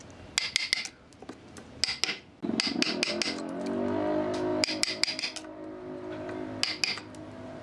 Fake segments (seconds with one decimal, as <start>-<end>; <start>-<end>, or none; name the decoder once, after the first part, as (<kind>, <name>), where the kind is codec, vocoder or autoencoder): 4.5-5.2 (vocoder, BigVGAN v2)